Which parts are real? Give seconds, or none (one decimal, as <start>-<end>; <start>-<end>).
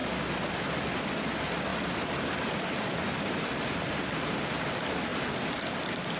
0.0-6.2